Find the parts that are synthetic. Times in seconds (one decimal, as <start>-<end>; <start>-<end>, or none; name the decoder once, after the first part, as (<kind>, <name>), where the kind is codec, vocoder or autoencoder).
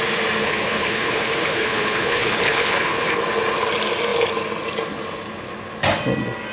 0.4-3.1 (codec, HILCodec)